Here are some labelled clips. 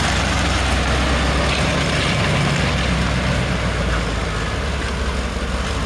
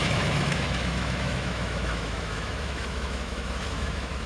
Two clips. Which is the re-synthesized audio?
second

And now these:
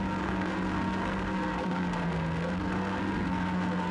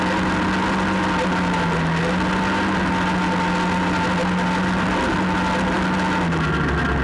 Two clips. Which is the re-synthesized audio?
first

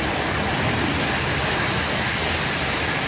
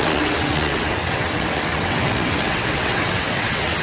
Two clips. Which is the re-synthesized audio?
second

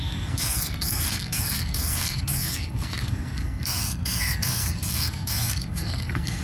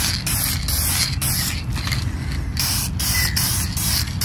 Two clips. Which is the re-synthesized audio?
first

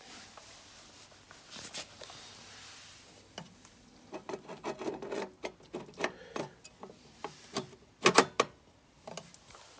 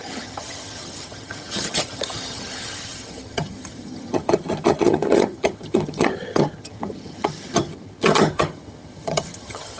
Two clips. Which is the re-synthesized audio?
second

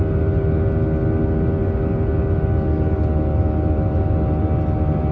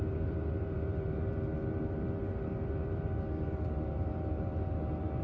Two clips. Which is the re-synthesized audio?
second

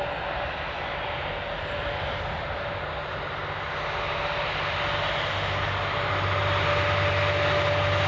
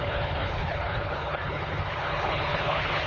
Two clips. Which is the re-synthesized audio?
second